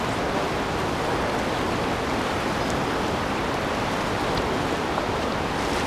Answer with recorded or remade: recorded